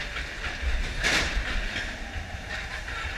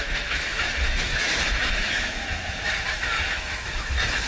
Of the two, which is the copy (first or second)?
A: second